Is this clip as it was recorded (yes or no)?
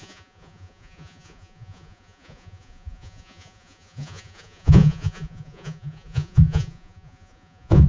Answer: no